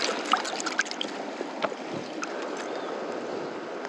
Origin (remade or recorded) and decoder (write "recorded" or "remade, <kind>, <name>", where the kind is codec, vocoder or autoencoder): recorded